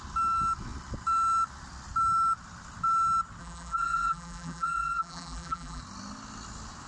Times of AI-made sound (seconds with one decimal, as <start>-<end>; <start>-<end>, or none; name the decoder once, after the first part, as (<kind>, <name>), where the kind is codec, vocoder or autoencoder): 3.4-5.8 (vocoder, BigVGAN v2)